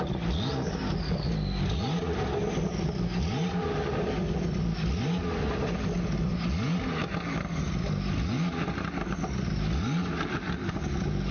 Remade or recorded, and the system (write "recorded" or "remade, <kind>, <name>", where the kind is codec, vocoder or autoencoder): recorded